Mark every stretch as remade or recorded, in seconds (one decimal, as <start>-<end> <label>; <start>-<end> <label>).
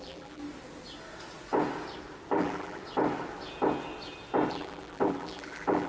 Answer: 0.0-0.4 remade; 0.4-2.3 recorded; 2.3-2.8 remade; 2.8-4.5 recorded; 4.5-5.9 remade